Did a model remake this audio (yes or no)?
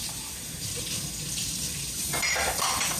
no